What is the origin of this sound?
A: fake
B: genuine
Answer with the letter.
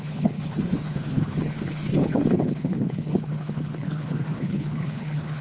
A